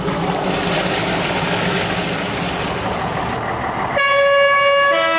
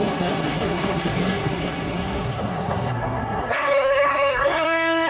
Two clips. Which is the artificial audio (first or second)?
second